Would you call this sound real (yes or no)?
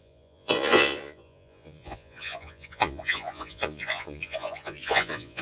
no